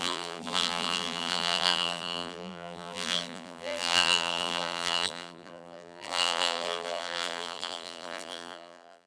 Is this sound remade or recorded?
remade